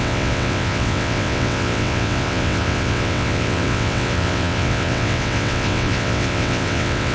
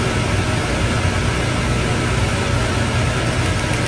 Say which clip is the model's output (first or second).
first